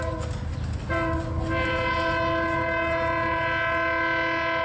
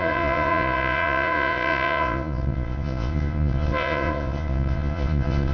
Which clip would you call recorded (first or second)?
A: first